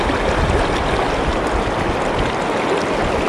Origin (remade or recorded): recorded